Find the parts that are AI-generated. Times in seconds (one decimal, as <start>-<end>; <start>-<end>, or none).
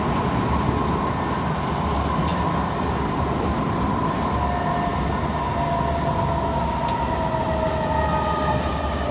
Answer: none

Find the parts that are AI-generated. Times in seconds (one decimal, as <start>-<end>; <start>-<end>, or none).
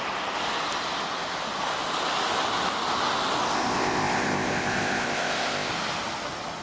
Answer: 3.5-5.7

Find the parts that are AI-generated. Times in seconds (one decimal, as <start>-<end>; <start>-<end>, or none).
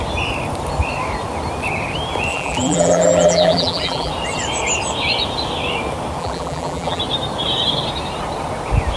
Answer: 2.3-4.1; 6.2-7.0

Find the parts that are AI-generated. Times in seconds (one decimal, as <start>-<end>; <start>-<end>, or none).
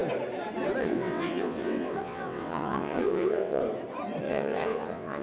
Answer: 0.8-3.6; 4.2-5.2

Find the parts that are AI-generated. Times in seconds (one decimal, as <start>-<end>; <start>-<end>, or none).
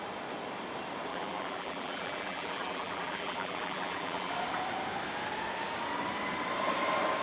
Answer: 1.1-4.3